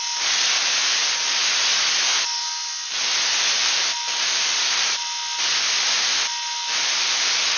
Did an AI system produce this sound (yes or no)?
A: no